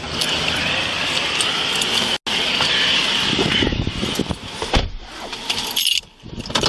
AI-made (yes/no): no